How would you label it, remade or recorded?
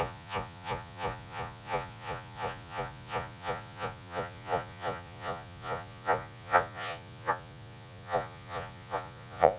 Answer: remade